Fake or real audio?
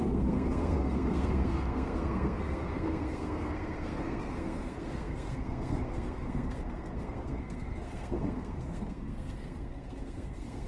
fake